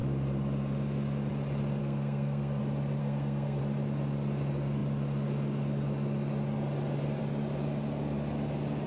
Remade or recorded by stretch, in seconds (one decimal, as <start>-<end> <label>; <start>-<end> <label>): 0.0-1.8 recorded; 1.8-2.6 remade; 2.6-3.0 recorded; 3.0-3.6 remade; 3.6-8.9 recorded

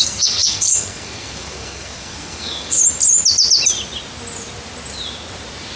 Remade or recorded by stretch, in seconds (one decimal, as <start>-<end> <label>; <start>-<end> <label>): 0.0-2.8 remade; 2.8-5.8 recorded

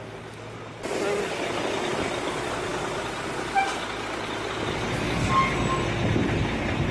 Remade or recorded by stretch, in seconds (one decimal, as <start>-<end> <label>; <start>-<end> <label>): 0.0-6.9 recorded